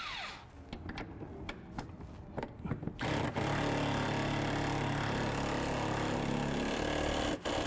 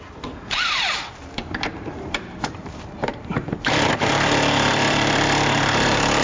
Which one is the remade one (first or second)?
second